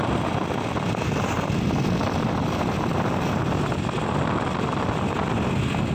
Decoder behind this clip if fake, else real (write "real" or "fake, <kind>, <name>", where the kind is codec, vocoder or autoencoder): real